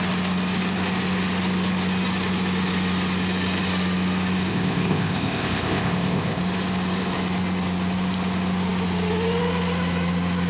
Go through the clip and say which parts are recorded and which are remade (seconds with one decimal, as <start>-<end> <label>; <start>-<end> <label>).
0.0-4.5 recorded; 4.5-6.4 remade; 6.4-10.5 recorded